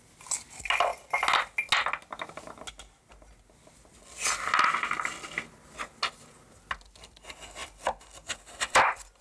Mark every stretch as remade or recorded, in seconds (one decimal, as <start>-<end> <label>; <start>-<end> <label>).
0.0-9.2 recorded